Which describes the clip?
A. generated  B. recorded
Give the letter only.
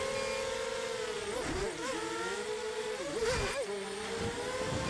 B